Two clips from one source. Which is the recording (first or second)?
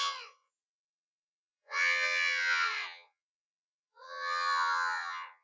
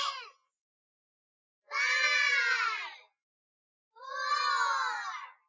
second